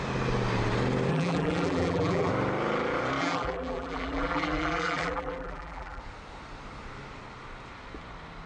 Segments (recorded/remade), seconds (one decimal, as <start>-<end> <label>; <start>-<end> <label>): 0.0-1.1 recorded; 1.1-2.3 remade; 2.3-3.2 recorded; 3.2-6.0 remade; 6.0-8.5 recorded